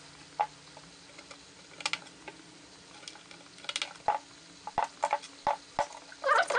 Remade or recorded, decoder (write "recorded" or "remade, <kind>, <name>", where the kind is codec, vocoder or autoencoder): recorded